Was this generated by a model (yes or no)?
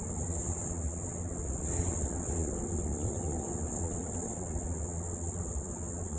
yes